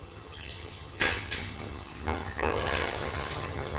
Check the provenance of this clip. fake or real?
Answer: fake